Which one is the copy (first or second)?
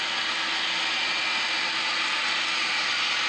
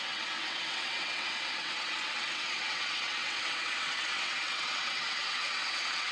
second